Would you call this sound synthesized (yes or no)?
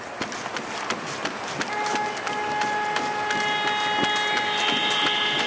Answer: no